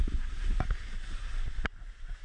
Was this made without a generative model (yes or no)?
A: yes